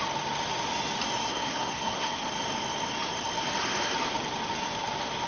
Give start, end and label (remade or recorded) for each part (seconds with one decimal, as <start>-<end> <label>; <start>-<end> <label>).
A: 0.0-1.3 recorded; 1.3-2.3 remade; 2.3-5.3 recorded